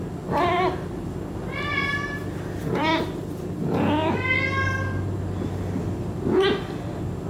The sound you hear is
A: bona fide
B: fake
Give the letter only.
A